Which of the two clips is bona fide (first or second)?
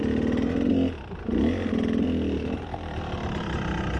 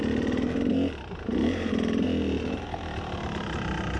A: first